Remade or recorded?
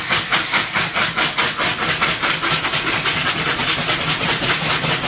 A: recorded